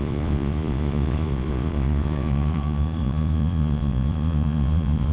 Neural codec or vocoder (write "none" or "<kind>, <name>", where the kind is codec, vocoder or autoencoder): vocoder, Vocos